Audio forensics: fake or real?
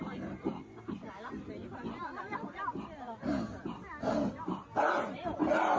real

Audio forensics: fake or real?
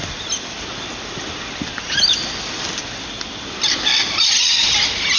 real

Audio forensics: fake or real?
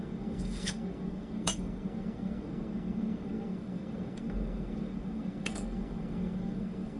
fake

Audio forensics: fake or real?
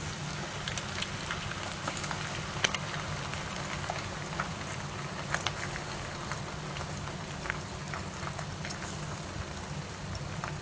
real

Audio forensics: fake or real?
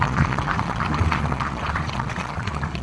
fake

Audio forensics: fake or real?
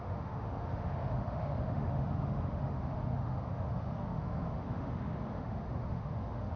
fake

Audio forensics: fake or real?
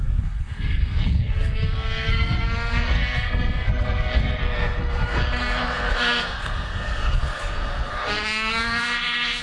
fake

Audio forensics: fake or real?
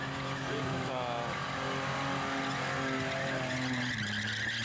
real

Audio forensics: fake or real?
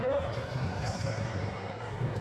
fake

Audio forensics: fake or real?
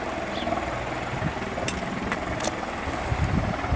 real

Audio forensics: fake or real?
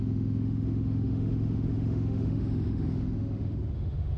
fake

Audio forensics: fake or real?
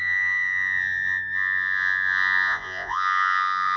fake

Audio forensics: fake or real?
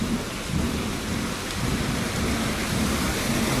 real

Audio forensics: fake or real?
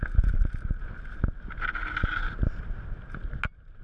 real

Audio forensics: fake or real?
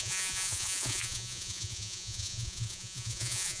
fake